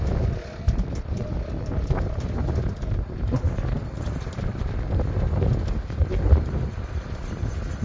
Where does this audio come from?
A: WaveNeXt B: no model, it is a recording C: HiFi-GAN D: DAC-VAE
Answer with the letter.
B